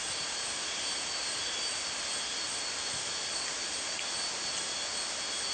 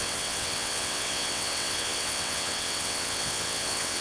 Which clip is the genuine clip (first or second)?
first